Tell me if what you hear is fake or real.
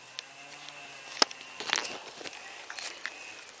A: real